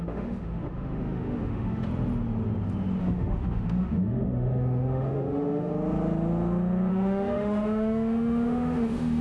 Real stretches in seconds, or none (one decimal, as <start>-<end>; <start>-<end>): 1.9-3.0; 5.7-6.9

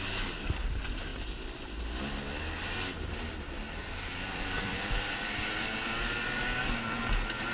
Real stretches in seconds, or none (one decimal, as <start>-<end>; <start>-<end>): 0.0-3.8; 5.7-7.5

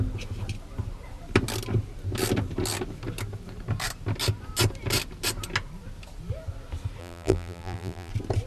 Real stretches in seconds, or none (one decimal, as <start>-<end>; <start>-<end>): 0.0-7.0; 8.1-8.5

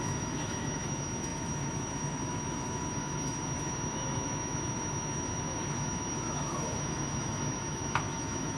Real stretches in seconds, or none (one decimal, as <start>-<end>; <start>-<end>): none

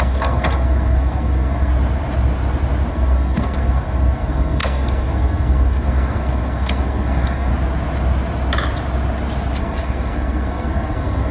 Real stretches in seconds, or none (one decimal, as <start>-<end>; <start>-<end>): 1.7-2.9; 7.5-9.6